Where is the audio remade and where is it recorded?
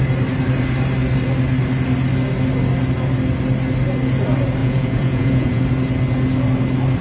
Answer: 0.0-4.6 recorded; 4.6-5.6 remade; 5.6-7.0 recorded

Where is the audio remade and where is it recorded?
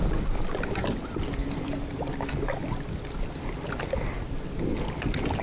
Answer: 0.0-1.4 recorded; 1.4-2.1 remade; 2.1-5.4 recorded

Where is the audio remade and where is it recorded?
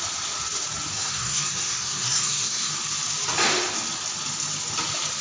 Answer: 0.0-0.9 recorded; 0.9-2.7 remade; 2.7-5.2 recorded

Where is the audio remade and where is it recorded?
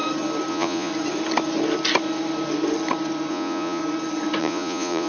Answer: 0.0-0.5 recorded; 0.5-0.9 remade; 0.9-3.3 recorded; 3.3-3.8 remade; 3.8-4.4 recorded; 4.4-5.1 remade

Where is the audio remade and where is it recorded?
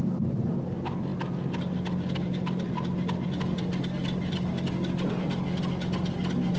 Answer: 0.0-6.6 recorded